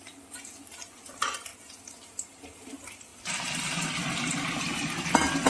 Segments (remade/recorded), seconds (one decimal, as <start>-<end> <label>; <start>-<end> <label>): 0.0-5.5 recorded